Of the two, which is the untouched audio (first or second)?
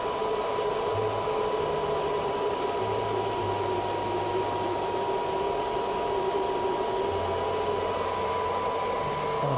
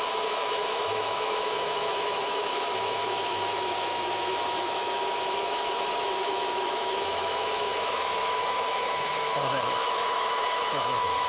first